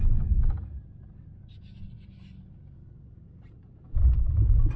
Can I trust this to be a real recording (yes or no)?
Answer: yes